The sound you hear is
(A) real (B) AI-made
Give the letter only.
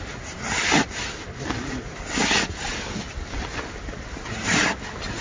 A